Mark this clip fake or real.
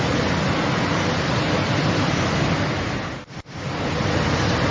real